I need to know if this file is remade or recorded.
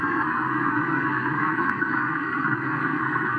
remade